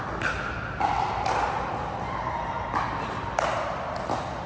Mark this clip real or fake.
real